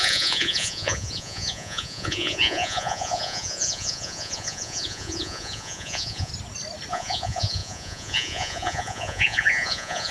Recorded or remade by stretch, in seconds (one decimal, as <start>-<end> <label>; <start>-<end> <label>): 0.0-6.3 remade; 6.3-6.9 recorded; 6.9-10.1 remade